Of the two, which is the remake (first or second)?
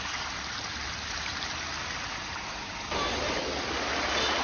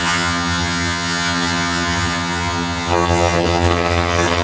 second